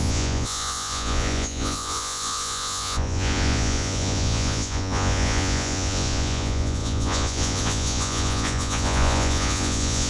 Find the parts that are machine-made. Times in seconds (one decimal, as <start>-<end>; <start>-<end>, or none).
0.0-10.1